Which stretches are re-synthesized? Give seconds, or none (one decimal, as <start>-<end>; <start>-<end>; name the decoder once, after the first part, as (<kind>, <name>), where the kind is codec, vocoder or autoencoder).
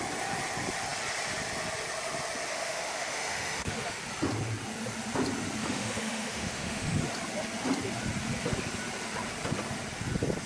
2.5-4.0 (autoencoder, DAC-VAE); 5.6-7.0